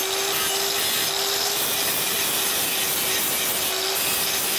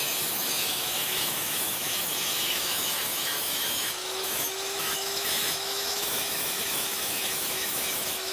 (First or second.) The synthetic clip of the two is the second